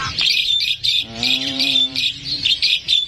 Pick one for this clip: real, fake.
fake